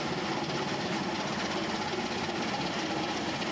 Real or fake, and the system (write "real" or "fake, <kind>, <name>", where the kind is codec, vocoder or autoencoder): real